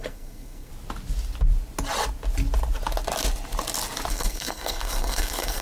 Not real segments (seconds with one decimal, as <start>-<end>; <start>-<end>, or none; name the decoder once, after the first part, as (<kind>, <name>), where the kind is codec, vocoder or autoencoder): 0.0-0.7 (codec, SNAC); 4.1-5.6